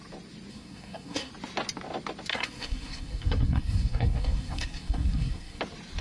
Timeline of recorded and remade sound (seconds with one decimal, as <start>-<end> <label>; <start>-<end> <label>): 0.0-0.5 recorded; 0.5-1.3 remade; 1.3-2.3 recorded; 2.3-5.6 remade; 5.6-6.0 recorded